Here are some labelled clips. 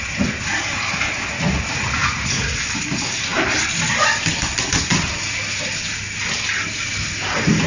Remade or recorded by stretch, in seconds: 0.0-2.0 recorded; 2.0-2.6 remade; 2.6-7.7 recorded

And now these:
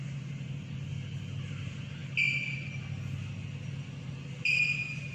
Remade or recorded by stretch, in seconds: 0.0-5.1 recorded

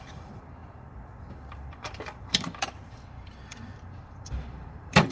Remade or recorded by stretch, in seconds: 0.0-5.1 remade

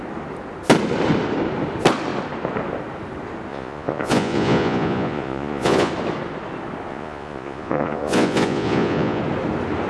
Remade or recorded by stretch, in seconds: 0.0-3.5 recorded; 3.5-5.9 remade; 5.9-6.9 recorded; 6.9-9.2 remade; 9.2-9.9 recorded